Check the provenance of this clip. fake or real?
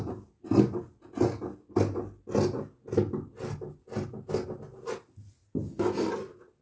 real